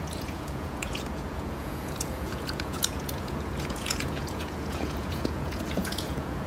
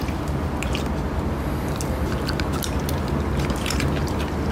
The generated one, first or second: first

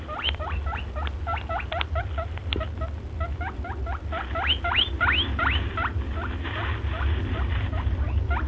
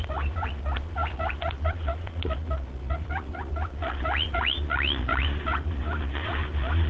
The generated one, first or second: second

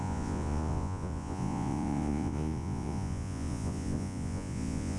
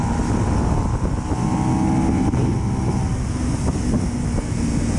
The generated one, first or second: first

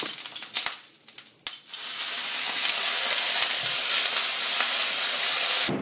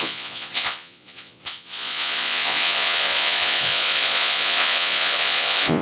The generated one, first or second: second